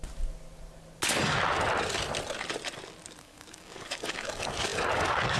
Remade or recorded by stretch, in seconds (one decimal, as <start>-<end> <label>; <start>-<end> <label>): 0.0-3.2 recorded; 3.2-5.4 remade